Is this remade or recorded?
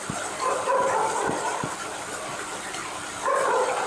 recorded